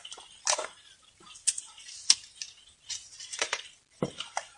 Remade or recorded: recorded